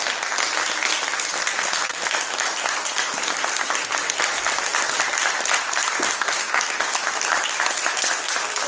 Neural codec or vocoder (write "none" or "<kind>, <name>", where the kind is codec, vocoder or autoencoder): none